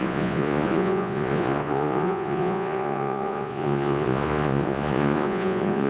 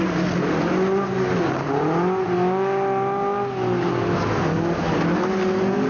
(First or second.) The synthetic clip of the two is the first